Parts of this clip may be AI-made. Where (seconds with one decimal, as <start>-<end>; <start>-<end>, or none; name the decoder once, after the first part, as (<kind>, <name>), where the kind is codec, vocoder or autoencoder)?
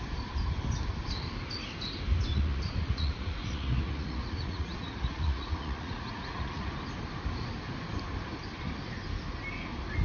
2.3-6.7 (vocoder, Vocos)